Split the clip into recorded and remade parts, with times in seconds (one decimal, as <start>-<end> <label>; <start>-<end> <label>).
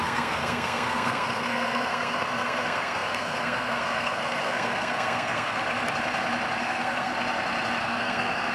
0.0-5.6 remade; 5.6-6.6 recorded; 6.6-7.1 remade; 7.1-7.8 recorded; 7.8-8.5 remade